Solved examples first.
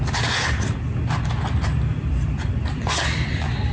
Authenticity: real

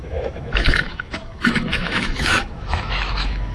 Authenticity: fake